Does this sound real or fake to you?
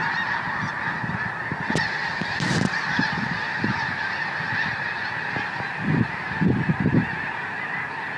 real